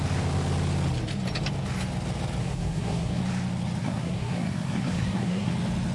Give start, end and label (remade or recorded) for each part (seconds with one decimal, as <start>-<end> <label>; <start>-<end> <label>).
0.0-2.4 recorded; 2.4-3.2 remade; 3.2-3.8 recorded; 3.8-5.5 remade; 5.5-5.9 recorded